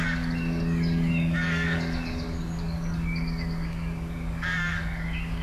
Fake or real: fake